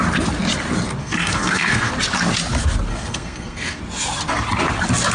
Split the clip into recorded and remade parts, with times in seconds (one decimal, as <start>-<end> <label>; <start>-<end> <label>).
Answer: 0.0-1.0 recorded; 1.0-1.9 remade; 1.9-2.9 recorded; 2.9-3.8 remade; 3.8-5.1 recorded